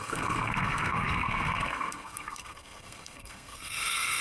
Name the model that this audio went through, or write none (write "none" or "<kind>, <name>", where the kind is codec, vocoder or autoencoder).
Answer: codec, SNAC